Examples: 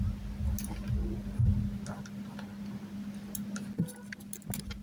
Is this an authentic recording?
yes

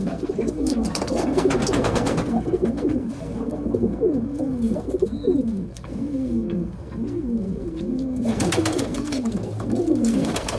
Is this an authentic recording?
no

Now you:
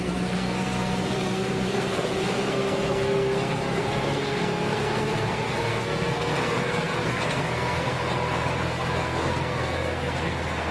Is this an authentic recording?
no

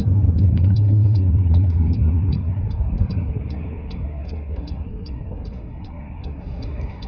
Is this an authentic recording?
no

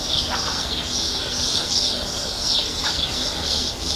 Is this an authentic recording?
no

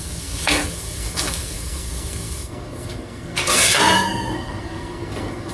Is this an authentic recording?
no